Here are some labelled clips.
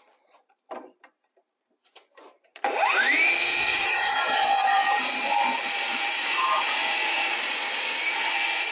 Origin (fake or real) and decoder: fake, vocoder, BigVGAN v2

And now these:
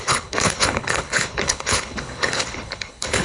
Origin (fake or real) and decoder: fake, codec, HILCodec